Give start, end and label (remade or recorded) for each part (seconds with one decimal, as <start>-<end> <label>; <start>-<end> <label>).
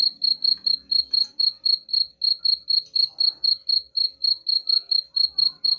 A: 0.0-5.8 recorded